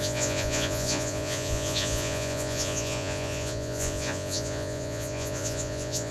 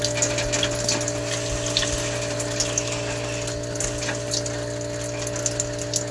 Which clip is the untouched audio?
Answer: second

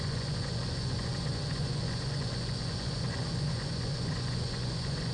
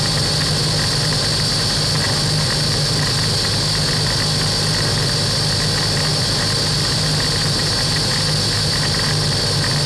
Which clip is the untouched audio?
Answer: second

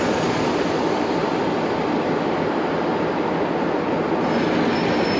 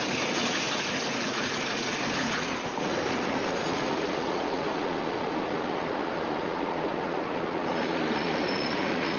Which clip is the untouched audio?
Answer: first